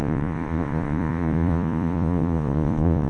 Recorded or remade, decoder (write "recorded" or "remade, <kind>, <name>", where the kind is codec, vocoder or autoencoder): remade, vocoder, Vocos